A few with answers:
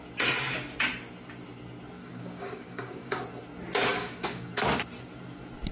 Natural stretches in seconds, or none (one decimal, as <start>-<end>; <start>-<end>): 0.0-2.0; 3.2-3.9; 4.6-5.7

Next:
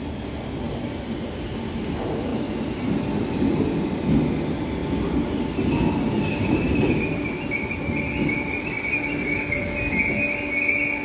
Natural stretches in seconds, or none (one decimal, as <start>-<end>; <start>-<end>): 0.0-11.0

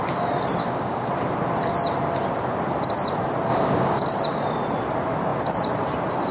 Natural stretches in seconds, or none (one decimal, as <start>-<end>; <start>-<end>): 0.0-0.6; 1.1-3.5; 4.0-6.3